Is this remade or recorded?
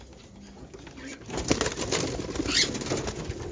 recorded